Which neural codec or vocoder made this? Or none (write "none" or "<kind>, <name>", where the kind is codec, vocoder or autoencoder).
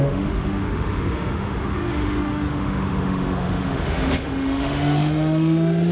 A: autoencoder, DAC-VAE